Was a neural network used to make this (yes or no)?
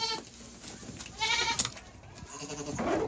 no